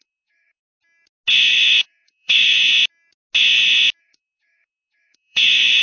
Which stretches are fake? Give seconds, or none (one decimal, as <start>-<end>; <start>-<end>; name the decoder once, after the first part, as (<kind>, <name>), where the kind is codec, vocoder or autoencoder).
0.0-0.6 (autoencoder, DAC-VAE); 1.5-2.5; 4.0-5.8